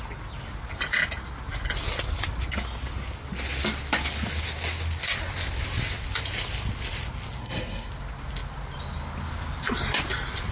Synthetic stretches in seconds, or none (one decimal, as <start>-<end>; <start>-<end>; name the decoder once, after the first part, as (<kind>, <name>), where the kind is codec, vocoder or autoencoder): 7.4-7.9 (codec, SNAC)

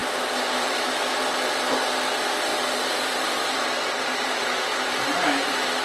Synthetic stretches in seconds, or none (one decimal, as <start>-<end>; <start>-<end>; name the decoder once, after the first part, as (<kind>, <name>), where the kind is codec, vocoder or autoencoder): 0.0-0.9 (vocoder, BigVGAN v2); 2.5-4.9

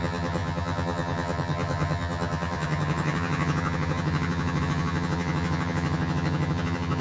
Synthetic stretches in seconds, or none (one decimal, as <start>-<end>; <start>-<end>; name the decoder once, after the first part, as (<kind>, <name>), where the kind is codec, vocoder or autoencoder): 0.0-7.0 (vocoder, HiFi-GAN)

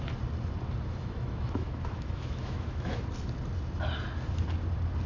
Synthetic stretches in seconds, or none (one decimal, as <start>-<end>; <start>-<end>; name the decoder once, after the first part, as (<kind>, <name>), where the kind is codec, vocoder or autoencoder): 0.9-2.9 (autoencoder, DAC-VAE)

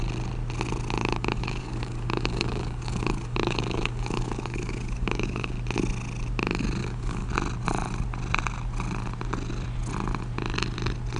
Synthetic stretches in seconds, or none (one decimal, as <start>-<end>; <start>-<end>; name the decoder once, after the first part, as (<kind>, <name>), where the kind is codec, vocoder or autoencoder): 1.0-5.5 (codec, DAC); 6.8-7.3

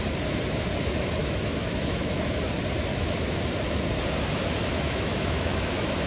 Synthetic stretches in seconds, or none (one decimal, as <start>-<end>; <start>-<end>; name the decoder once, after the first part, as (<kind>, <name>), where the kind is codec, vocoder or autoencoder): 1.2-2.4 (autoencoder, DAC-VAE); 2.9-3.4; 4.7-6.1

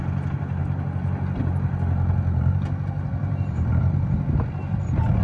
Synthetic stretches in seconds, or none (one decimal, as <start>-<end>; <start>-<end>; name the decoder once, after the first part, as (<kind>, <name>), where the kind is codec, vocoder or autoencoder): 3.2-3.8 (vocoder, BigVGAN v2)

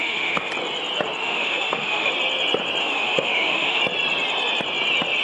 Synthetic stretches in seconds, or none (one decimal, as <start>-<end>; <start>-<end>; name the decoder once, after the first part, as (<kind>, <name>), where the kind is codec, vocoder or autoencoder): 0.0-0.5 (autoencoder, DAC-VAE); 1.2-2.1; 2.8-3.8